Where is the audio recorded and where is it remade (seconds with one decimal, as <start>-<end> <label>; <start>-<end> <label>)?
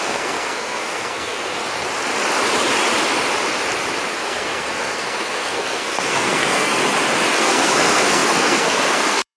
0.0-1.6 remade; 1.6-4.1 recorded; 4.1-6.8 remade; 6.8-7.4 recorded; 7.4-9.4 remade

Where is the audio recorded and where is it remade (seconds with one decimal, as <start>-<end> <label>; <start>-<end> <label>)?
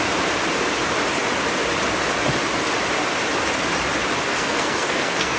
0.0-4.3 recorded; 4.3-5.4 remade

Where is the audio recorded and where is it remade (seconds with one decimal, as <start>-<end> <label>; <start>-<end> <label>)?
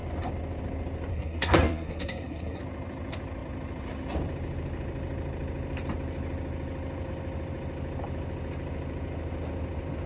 0.0-1.1 recorded; 1.1-2.6 remade; 2.6-10.1 recorded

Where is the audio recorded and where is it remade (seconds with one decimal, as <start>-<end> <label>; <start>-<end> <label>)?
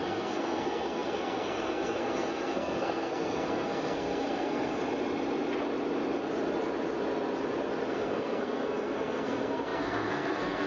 0.0-4.8 remade; 4.8-7.9 recorded; 7.9-10.7 remade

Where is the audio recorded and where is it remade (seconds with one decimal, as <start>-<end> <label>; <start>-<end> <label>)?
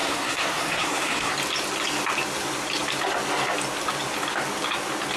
0.0-1.3 remade; 1.3-5.2 recorded